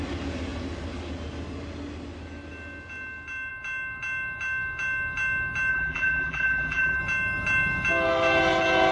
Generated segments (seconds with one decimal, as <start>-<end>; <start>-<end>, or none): 5.7-7.0